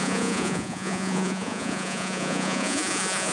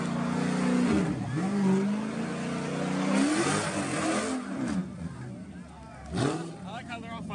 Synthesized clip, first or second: first